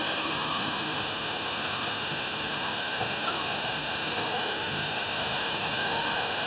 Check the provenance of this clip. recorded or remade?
remade